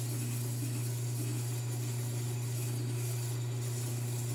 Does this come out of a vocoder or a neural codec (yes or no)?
no